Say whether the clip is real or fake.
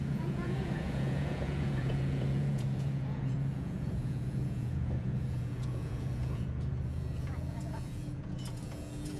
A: fake